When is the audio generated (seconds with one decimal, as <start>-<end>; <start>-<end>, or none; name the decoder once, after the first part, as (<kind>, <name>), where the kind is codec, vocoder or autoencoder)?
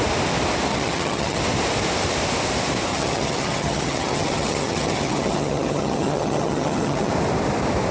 0.7-1.4 (vocoder, HiFi-GAN); 2.9-7.1